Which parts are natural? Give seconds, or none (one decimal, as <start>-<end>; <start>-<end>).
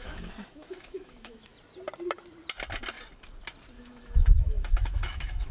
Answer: 1.5-3.8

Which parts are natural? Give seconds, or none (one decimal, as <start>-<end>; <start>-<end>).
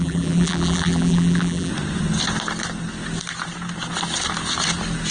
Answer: 1.7-5.1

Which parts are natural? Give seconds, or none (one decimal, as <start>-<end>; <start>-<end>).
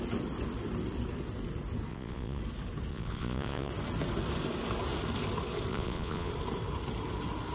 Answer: 0.0-1.9; 2.4-2.9; 3.7-5.7; 6.3-7.5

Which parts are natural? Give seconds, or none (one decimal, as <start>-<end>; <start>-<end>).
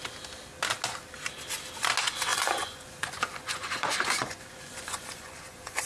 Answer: 0.0-2.3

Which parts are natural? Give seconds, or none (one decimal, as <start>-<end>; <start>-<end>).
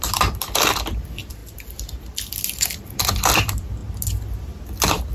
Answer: 3.8-5.1